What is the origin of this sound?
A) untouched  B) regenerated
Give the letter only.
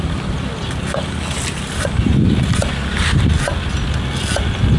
A